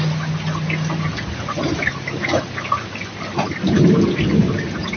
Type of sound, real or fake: real